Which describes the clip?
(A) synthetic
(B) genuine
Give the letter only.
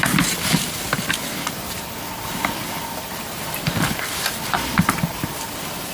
A